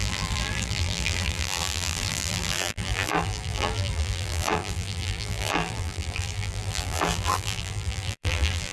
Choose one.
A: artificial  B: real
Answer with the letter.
A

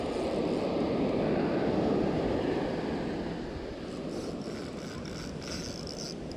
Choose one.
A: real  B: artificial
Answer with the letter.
A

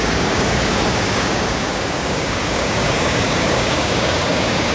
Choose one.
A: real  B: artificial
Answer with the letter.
B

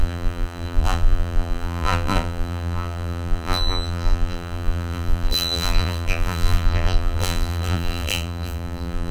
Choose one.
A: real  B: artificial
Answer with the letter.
B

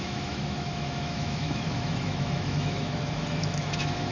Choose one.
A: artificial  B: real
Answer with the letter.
A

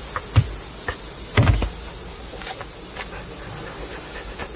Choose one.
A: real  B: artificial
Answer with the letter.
A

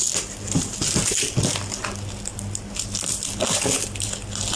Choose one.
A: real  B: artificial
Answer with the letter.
A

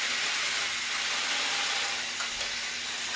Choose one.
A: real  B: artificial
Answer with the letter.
A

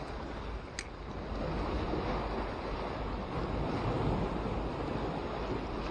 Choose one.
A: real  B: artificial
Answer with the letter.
A